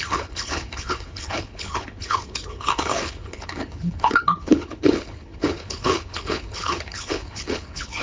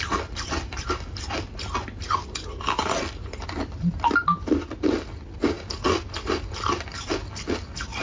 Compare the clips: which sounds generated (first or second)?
first